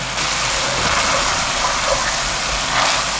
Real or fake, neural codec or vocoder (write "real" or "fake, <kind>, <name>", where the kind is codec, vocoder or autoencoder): real